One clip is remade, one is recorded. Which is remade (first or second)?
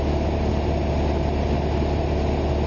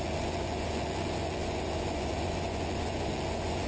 second